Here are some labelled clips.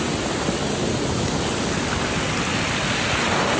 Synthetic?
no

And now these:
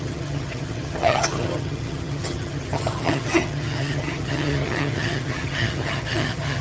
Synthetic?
yes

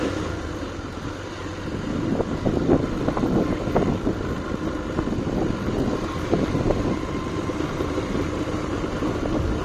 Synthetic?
no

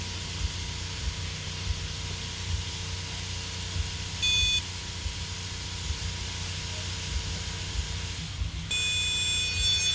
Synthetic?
no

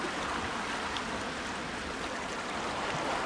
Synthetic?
no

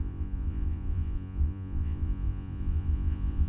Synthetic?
yes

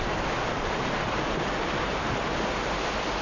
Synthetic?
no